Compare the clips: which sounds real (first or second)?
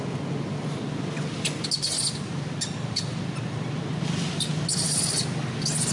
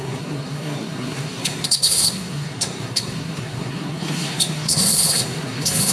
first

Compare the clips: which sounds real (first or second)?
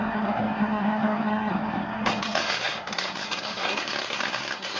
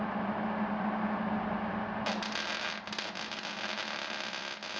second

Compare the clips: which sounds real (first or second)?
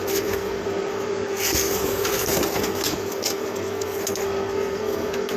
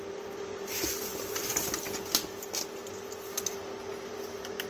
second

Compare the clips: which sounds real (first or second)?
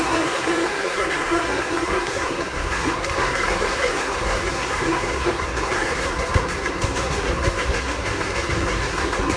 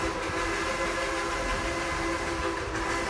second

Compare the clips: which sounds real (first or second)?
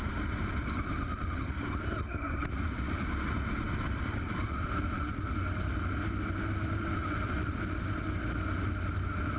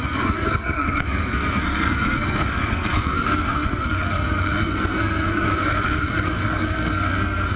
first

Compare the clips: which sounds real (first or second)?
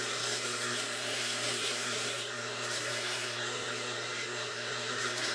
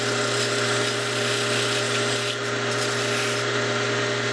second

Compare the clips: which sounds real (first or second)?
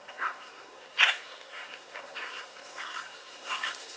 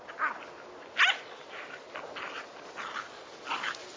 second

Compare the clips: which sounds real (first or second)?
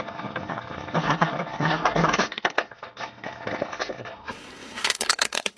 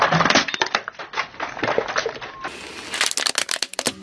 second